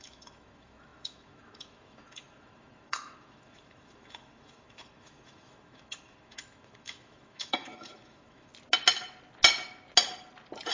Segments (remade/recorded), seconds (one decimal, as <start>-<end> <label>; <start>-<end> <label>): 0.0-8.5 remade; 8.5-10.7 recorded